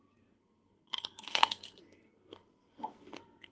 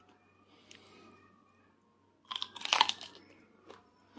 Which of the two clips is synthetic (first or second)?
first